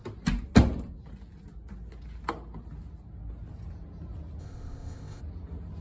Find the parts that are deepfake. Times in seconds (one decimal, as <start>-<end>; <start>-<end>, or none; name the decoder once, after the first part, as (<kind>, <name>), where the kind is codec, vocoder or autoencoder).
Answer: 4.4-5.2 (codec, ZipCodec)